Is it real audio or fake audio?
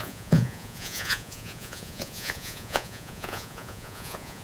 fake